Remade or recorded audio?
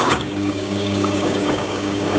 remade